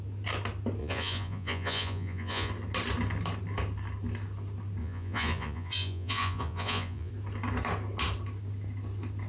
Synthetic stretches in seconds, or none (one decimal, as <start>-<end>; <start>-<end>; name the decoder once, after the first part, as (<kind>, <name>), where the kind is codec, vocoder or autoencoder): 0.8-2.5 (vocoder, Vocos); 4.8-7.1